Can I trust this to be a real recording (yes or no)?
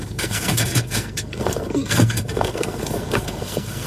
no